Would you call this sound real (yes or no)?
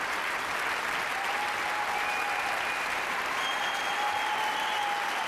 yes